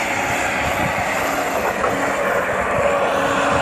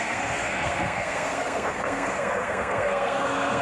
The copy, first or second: second